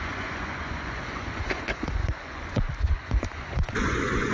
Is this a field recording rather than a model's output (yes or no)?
no